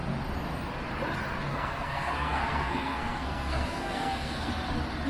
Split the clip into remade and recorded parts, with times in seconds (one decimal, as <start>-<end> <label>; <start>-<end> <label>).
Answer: 0.0-1.5 recorded; 1.5-4.5 remade; 4.5-5.1 recorded